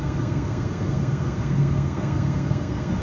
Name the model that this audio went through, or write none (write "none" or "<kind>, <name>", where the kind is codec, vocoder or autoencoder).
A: codec, SNAC